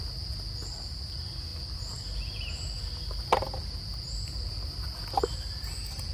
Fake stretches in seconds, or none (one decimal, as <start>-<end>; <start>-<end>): none